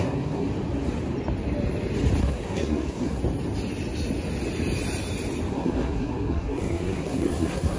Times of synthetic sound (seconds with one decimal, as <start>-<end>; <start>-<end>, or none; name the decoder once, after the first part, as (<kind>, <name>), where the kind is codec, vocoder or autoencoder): 0.0-0.5 (codec, SNAC); 2.2-3.2; 5.5-7.8